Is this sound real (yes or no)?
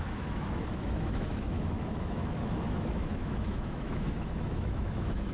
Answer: no